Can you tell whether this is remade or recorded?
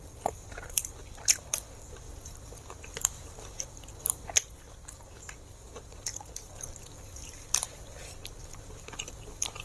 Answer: remade